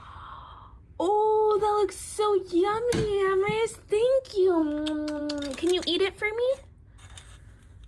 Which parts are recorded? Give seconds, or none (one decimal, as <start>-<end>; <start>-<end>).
0.0-7.9